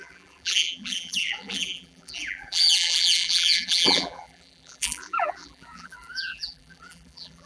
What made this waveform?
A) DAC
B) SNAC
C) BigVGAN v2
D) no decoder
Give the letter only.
C